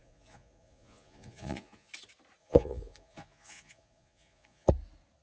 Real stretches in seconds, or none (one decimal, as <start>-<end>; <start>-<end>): 1.9-2.4; 4.7-5.2